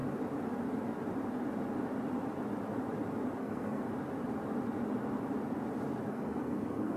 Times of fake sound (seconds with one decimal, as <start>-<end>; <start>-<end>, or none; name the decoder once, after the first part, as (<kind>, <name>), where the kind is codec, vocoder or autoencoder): 3.4-3.9 (codec, SNAC); 6.1-7.0